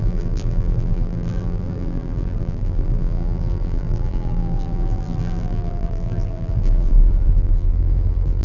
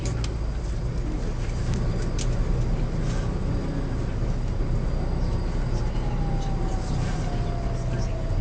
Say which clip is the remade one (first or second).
first